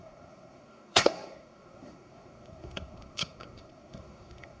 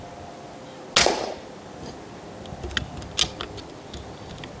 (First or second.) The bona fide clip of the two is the second